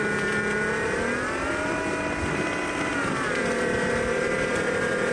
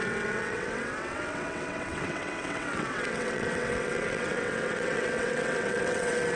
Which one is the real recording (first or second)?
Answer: first